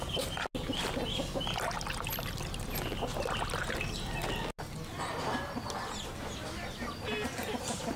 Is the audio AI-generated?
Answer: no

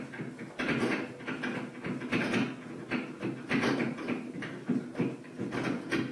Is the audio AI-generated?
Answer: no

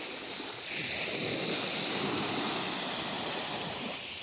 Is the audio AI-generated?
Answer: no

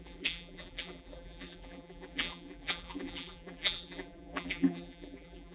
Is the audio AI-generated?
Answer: yes